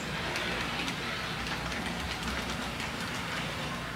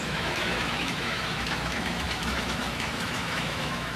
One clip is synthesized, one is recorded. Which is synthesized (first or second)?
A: second